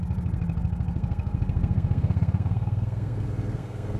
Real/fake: fake